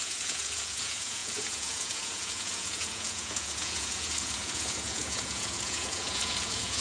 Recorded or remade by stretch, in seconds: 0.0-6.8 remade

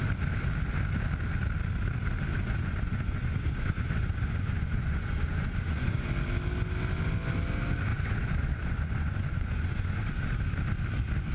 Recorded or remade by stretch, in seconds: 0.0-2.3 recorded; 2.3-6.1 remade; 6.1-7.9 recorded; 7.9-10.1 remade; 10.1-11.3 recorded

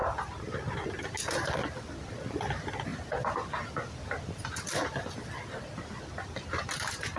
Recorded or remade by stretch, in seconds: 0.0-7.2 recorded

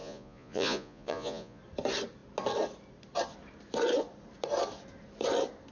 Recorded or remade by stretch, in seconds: 0.0-1.6 remade; 1.6-5.7 recorded

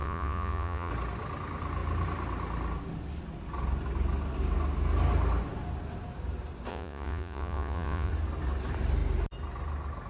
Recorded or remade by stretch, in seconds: 0.0-0.9 remade; 0.9-6.7 recorded; 6.7-8.1 remade; 8.1-10.1 recorded

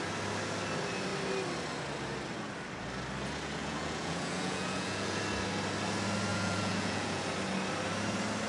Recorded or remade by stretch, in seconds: 0.0-3.6 recorded; 3.6-5.2 remade; 5.2-6.3 recorded; 6.3-7.2 remade; 7.2-8.5 recorded